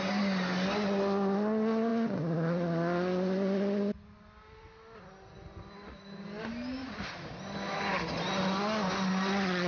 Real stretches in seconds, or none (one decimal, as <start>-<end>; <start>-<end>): 0.0-9.7

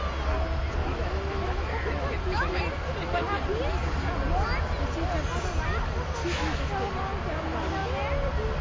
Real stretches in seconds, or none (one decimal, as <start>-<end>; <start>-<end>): 0.0-0.8; 2.6-6.2; 6.7-8.6

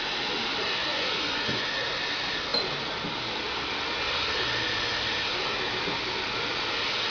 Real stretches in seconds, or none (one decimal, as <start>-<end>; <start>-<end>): 0.0-0.8; 1.7-7.1

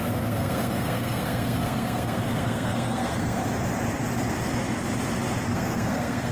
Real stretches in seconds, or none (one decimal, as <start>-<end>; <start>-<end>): 3.4-5.5

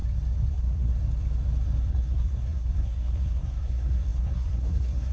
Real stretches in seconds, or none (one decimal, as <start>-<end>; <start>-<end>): 0.0-0.5; 0.9-1.9

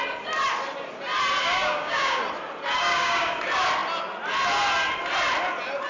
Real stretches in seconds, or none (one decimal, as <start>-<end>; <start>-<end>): 0.0-1.4; 2.2-2.8; 3.4-5.9

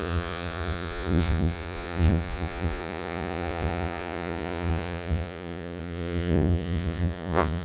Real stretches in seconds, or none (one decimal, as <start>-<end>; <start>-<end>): none

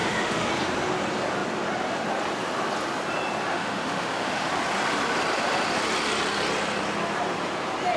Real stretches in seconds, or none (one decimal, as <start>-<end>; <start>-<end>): 0.5-3.5; 4.5-8.0